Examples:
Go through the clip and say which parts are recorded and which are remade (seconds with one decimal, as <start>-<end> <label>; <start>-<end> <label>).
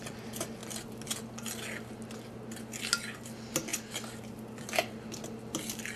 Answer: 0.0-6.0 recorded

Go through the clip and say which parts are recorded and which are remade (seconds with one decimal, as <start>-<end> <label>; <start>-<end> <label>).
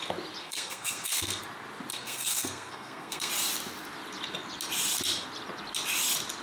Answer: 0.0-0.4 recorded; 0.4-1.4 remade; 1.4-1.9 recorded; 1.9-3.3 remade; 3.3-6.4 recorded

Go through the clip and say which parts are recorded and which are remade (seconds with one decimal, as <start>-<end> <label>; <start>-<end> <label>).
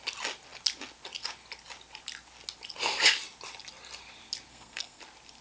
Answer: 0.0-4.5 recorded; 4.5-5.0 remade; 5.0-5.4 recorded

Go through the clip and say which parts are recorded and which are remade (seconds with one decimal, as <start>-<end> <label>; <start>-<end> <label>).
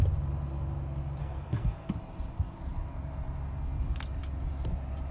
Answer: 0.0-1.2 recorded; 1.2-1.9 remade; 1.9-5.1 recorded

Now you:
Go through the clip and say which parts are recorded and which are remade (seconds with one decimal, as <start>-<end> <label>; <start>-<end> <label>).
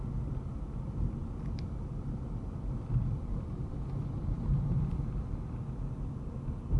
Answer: 0.0-6.8 recorded